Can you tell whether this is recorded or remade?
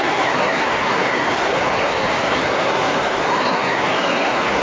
remade